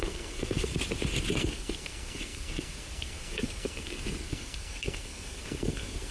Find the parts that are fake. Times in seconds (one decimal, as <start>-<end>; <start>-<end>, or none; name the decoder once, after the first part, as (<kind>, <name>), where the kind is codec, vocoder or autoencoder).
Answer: 0.0-0.7 (codec, SNAC); 1.3-6.1